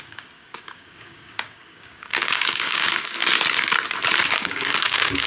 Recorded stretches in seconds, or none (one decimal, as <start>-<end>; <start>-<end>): 3.2-4.3